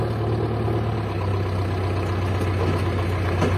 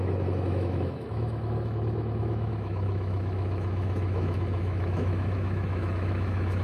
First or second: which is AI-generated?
second